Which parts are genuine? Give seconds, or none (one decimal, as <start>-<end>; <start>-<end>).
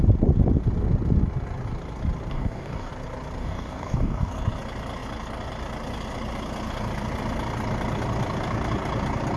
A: 0.0-2.3; 2.9-3.4; 4.3-9.4